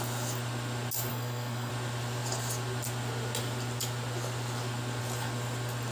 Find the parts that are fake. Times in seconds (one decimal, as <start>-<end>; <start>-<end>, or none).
1.1-1.7